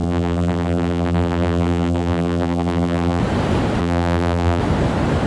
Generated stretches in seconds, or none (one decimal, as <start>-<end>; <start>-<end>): 0.0-3.2; 3.8-4.6

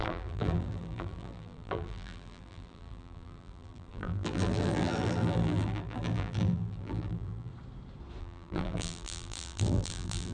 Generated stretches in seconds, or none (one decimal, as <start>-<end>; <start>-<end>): 0.0-7.5; 8.2-10.3

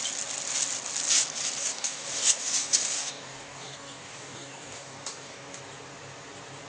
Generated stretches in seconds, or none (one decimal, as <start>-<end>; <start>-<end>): 1.6-5.6

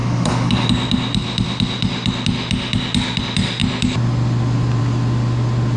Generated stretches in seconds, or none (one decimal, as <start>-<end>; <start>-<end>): 0.0-0.7

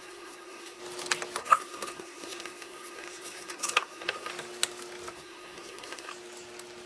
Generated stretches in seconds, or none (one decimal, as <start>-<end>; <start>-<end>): 0.0-0.8; 1.4-4.3; 5.1-6.1